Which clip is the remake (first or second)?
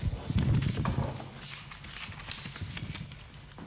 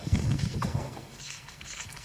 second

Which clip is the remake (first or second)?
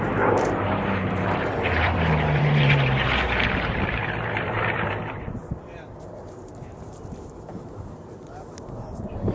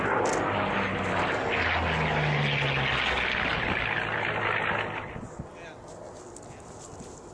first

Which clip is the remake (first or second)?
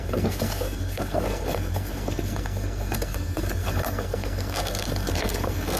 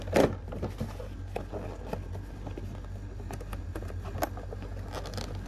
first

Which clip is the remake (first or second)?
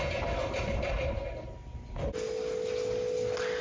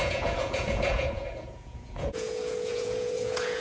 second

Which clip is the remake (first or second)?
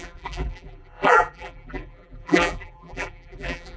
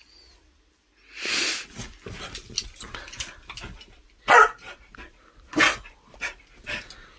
first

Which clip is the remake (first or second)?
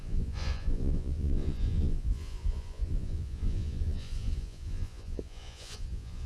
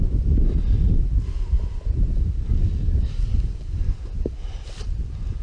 first